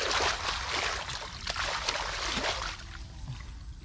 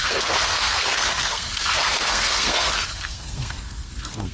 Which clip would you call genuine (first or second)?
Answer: first